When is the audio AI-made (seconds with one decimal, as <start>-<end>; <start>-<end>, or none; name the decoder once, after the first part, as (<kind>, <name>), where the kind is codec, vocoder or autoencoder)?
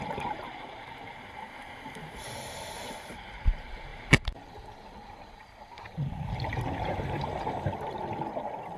0.0-8.8 (vocoder, BigVGAN v2)